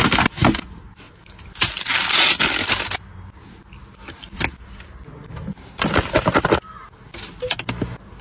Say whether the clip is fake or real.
real